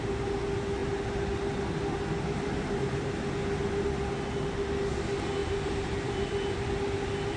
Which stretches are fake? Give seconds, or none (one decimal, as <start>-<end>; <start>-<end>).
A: 5.4-6.4